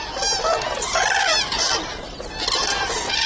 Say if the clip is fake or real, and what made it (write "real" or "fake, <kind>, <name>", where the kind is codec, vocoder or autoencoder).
real